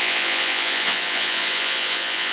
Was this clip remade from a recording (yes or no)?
yes